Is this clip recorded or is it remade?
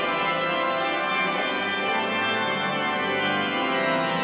recorded